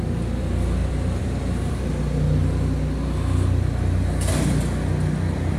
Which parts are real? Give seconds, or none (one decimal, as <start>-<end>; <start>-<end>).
0.0-0.8; 1.7-5.6

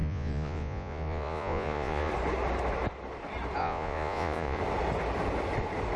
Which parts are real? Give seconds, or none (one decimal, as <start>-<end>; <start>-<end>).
2.1-3.6; 4.6-6.0

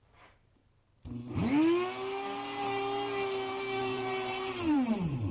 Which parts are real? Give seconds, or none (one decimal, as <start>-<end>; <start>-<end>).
0.6-3.8

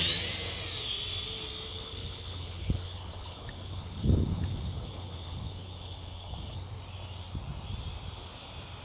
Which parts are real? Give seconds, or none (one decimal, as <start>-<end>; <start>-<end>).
0.0-1.7; 6.7-8.8

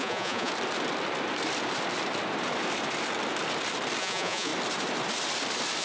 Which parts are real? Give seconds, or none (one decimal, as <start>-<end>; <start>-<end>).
0.5-4.0; 4.5-5.8

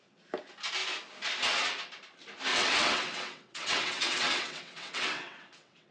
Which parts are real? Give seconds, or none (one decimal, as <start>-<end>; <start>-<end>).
0.0-2.5

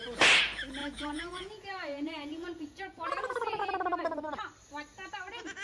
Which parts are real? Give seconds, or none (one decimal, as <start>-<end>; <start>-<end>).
0.0-0.8; 3.6-5.6

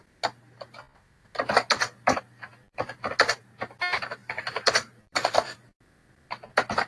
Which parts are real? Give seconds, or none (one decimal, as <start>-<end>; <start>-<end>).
0.0-2.5; 3.1-4.2; 6.3-6.9